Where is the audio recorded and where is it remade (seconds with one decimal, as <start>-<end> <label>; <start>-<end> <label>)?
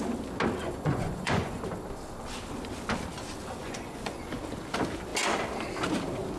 0.0-0.6 recorded; 0.6-1.6 remade; 1.6-3.6 recorded; 3.6-4.4 remade; 4.4-6.4 recorded